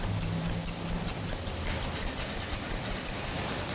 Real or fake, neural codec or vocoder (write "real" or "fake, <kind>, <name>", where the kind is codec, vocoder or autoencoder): real